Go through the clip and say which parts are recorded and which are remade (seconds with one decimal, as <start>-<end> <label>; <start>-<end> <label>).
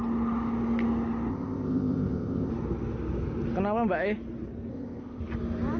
0.0-1.3 recorded; 1.3-2.5 remade; 2.5-4.7 recorded; 4.7-5.2 remade; 5.2-5.8 recorded